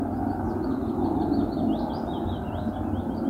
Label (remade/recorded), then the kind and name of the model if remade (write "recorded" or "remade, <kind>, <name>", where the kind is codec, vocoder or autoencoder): recorded